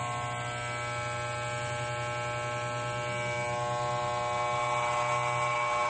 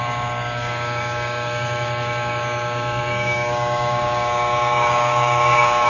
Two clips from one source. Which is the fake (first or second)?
second